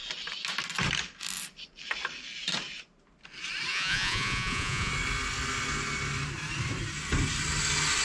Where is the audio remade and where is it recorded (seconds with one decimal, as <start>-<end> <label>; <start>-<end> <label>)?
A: 0.0-3.7 recorded; 3.7-4.9 remade; 4.9-8.0 recorded